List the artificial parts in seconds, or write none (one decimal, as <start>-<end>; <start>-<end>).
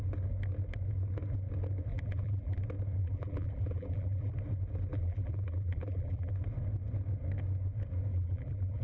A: 1.9-2.6; 3.0-4.3; 4.9-6.3; 8.1-8.8